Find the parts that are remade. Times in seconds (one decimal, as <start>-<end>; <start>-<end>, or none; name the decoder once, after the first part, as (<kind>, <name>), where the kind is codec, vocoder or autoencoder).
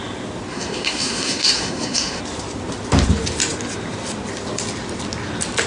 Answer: 0.5-2.2 (codec, SNAC)